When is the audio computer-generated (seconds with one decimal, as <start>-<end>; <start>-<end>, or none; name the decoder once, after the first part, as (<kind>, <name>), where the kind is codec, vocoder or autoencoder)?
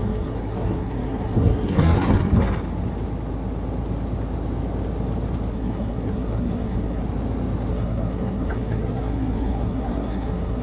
0.0-2.2 (codec, SNAC); 5.5-7.0; 7.7-10.6